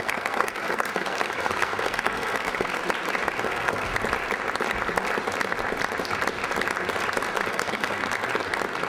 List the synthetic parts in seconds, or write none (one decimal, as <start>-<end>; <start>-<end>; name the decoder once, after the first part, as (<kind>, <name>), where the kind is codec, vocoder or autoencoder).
0.0-2.8 (codec, SNAC); 3.4-3.9; 7.5-8.0